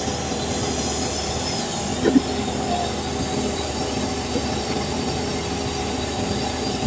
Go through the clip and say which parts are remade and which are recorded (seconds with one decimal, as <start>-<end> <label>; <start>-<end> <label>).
0.0-1.9 remade; 1.9-3.2 recorded; 3.2-5.3 remade; 5.3-5.8 recorded; 5.8-6.9 remade